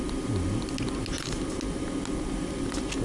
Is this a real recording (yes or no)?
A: yes